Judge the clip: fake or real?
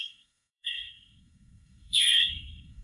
fake